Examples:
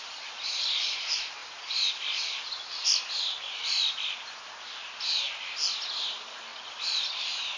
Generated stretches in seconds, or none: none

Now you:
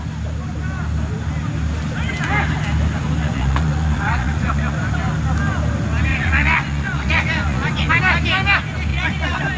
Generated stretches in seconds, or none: 3.2-4.9 (vocoder, Vocos); 6.1-7.9; 8.9-9.6

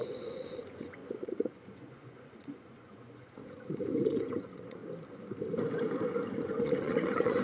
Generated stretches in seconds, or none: 0.0-4.8 (vocoder, Vocos); 6.3-7.4